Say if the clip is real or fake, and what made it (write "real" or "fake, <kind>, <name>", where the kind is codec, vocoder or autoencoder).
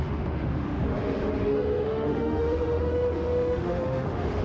fake, autoencoder, DAC-VAE